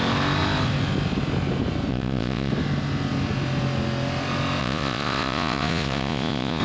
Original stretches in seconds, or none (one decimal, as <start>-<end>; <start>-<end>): 0.0-1.9; 2.5-4.6